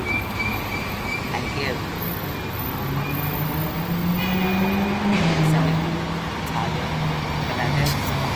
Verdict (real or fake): real